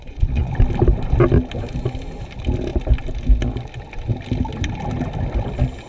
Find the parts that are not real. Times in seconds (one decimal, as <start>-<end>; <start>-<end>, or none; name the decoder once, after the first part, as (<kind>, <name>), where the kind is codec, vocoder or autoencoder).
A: 0.0-0.5 (vocoder, Vocos)